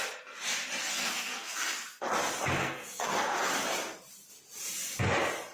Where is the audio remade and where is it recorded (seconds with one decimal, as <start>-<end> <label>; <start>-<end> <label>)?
0.0-0.8 recorded; 0.8-2.0 remade; 2.0-2.6 recorded; 2.6-3.5 remade; 3.5-5.5 recorded